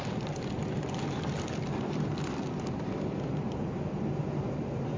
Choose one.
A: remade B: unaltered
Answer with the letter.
B